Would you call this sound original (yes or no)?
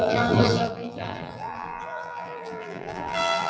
no